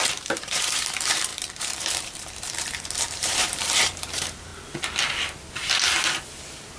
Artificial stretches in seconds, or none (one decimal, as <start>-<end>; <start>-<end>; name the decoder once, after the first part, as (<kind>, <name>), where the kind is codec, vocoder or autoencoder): 0.0-4.5 (vocoder, BigVGAN v2)